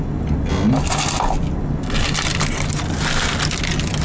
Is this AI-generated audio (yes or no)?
no